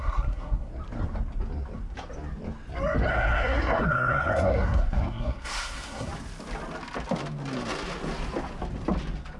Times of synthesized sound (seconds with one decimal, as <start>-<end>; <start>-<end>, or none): 0.0-0.7; 3.1-6.1